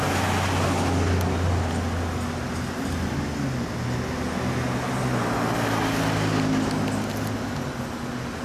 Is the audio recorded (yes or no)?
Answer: yes